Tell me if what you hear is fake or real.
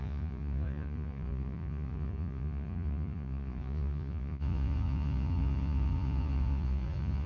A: fake